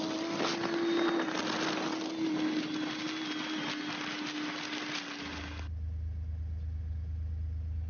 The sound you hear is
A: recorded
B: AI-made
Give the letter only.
A